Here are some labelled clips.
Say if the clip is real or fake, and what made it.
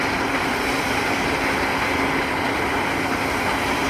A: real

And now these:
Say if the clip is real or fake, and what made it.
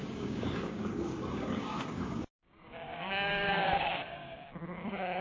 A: fake, codec, DAC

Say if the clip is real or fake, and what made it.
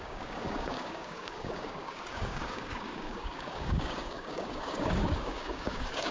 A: fake, codec, DAC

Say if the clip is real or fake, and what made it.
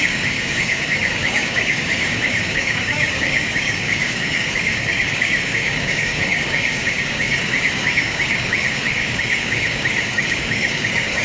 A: fake, codec, DAC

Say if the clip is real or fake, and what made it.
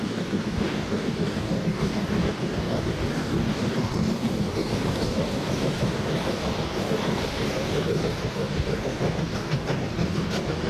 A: fake, codec, DAC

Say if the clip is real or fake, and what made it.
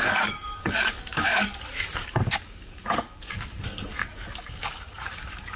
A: fake, codec, DAC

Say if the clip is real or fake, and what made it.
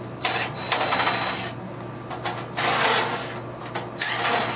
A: real